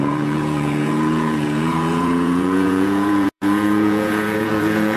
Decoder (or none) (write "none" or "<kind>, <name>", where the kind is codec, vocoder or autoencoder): vocoder, Vocos